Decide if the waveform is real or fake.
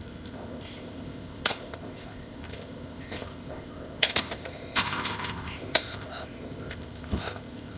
fake